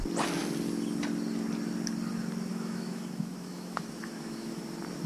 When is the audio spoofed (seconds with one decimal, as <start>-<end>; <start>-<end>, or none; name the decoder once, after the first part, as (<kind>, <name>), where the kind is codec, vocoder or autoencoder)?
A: 2.5-4.6 (autoencoder, DAC-VAE)